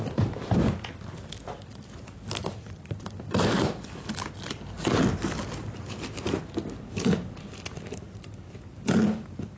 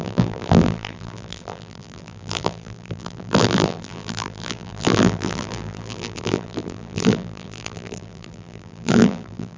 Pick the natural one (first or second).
first